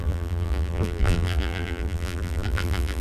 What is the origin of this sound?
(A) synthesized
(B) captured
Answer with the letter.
A